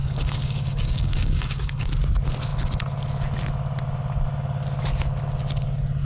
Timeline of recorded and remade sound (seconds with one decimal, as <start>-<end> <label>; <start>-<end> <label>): 0.0-1.9 remade; 1.9-6.0 recorded